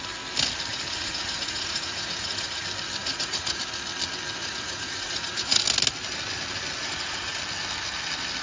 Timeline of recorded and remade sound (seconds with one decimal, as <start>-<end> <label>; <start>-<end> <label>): 0.0-0.7 recorded; 0.7-2.6 remade; 2.6-3.0 recorded; 3.0-3.6 remade; 3.6-4.4 recorded; 4.4-5.6 remade; 5.6-6.8 recorded; 6.8-7.4 remade; 7.4-8.4 recorded

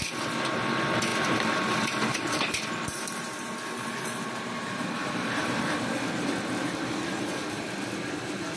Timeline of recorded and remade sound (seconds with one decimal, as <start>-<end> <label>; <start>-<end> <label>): 0.0-1.1 recorded; 1.1-5.8 remade; 5.8-6.6 recorded; 6.6-7.6 remade; 7.6-8.6 recorded

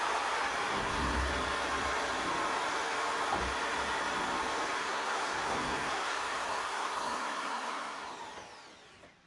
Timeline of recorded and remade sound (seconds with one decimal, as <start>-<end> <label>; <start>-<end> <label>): 0.0-0.7 recorded; 0.7-1.3 remade; 1.3-4.8 recorded; 4.8-8.1 remade; 8.1-9.3 recorded